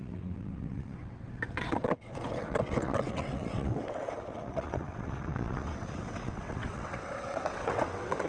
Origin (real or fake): fake